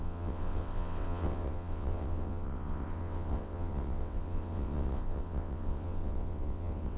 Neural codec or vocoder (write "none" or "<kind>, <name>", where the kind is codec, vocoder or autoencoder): vocoder, WaveNeXt